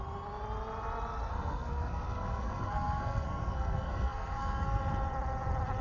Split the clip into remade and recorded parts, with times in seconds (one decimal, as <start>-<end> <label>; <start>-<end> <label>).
0.0-1.3 recorded; 1.3-4.8 remade; 4.8-5.8 recorded